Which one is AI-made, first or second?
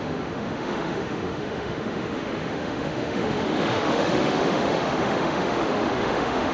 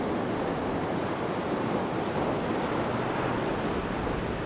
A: first